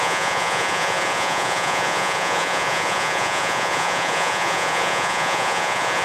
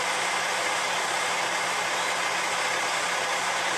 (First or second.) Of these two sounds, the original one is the second